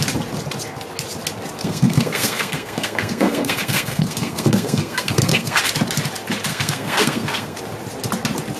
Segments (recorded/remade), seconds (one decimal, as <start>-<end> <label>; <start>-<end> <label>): 0.0-1.6 recorded; 1.6-5.6 remade; 5.6-6.5 recorded; 6.5-7.6 remade; 7.6-8.6 recorded